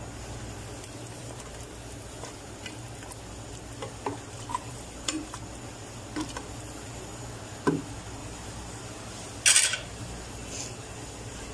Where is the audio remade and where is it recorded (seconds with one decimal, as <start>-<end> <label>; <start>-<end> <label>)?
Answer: 0.0-4.5 recorded; 4.5-5.4 remade; 5.4-8.2 recorded; 8.2-8.8 remade; 8.8-11.5 recorded